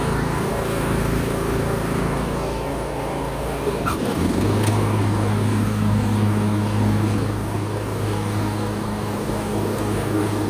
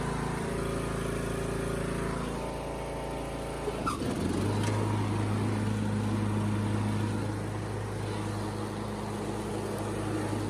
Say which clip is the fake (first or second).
first